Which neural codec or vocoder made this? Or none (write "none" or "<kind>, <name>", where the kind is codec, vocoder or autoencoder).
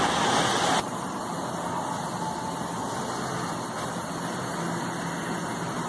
none